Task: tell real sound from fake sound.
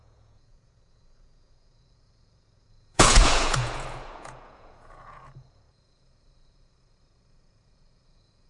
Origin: fake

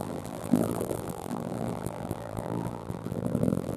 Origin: fake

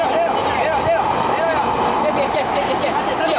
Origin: real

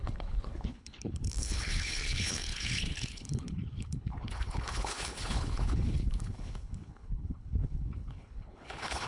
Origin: fake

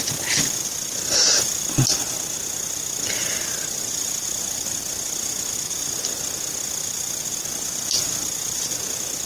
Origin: real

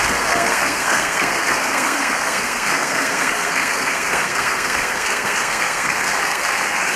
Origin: fake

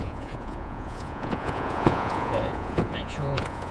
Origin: fake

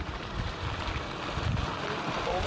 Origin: real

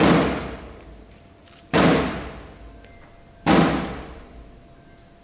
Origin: real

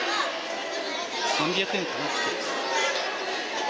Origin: real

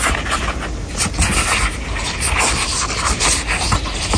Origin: real